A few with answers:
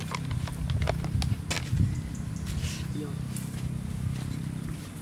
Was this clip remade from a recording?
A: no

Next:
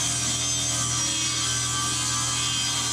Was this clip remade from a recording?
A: no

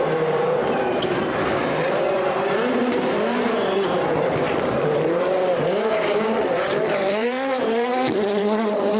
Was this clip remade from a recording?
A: yes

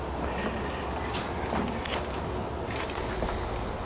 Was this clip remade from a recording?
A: no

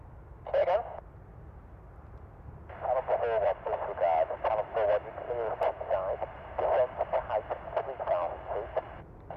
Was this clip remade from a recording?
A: no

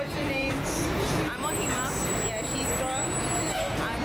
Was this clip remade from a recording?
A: no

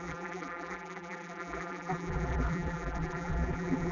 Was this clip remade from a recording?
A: yes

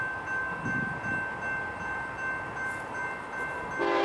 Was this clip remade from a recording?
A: no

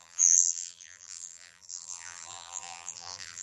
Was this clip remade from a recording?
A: yes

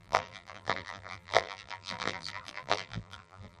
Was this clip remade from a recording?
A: yes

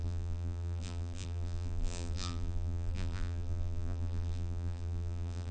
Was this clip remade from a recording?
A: yes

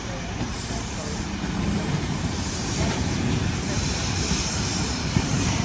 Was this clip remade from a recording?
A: yes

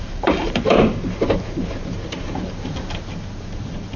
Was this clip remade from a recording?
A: yes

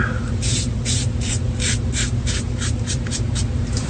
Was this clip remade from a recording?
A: yes